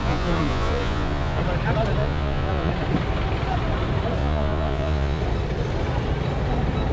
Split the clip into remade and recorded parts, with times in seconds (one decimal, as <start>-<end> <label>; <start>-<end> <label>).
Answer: 0.0-1.4 remade; 1.4-2.0 recorded; 2.0-2.7 remade; 2.7-4.2 recorded; 4.2-5.2 remade; 5.2-6.9 recorded